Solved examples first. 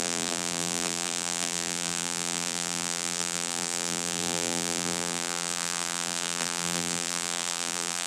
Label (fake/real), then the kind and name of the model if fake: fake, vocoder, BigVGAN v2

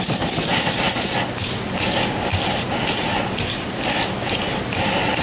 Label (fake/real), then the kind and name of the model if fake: real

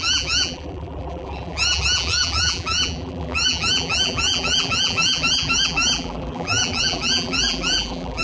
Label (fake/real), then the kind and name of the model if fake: fake, vocoder, BigVGAN v2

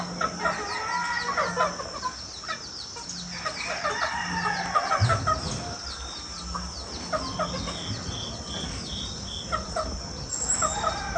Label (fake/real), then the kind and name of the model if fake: real